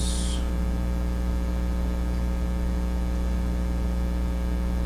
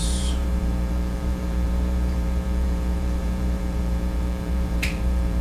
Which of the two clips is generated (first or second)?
second